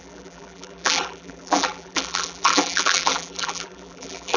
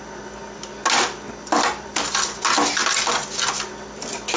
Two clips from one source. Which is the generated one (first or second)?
first